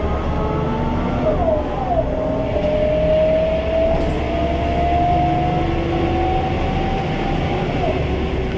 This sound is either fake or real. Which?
real